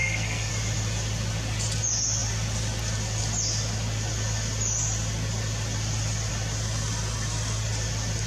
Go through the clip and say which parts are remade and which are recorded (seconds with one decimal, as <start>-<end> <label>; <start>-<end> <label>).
0.0-0.5 remade; 0.5-8.3 recorded